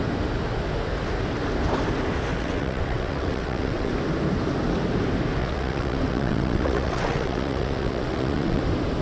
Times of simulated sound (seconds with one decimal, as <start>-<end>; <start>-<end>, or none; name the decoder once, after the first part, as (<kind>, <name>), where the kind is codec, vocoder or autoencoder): 2.3-3.9 (vocoder, WaveNeXt); 5.4-8.6